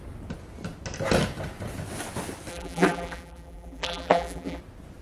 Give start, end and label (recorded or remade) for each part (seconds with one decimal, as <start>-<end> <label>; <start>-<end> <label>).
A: 0.0-2.5 recorded; 2.5-4.6 remade; 4.6-5.0 recorded